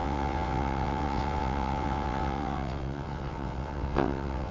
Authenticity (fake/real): fake